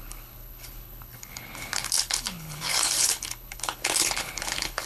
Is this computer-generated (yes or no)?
yes